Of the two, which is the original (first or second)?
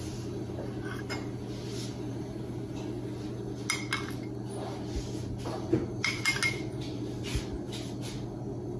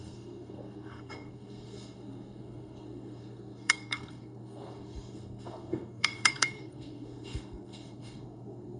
first